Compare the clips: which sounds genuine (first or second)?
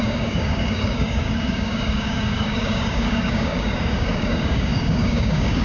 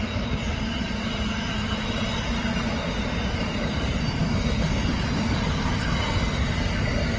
second